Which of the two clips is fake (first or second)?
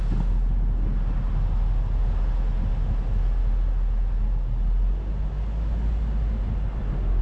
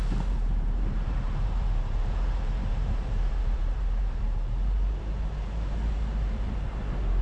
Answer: second